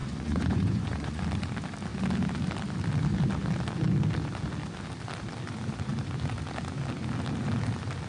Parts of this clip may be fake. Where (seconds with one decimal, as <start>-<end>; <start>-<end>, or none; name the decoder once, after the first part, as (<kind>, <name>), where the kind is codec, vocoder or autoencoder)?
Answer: 0.0-1.2 (vocoder, Vocos)